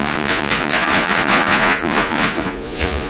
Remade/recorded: remade